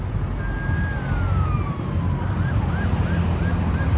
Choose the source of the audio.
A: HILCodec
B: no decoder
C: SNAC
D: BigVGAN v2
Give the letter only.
B